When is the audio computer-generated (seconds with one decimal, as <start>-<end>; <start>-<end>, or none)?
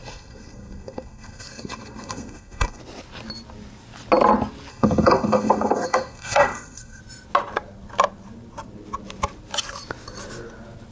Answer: 0.0-2.8; 4.7-7.0